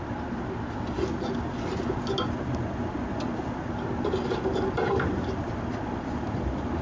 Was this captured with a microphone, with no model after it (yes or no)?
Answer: yes